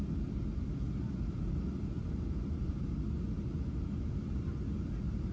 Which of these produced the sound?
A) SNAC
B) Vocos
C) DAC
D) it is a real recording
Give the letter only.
D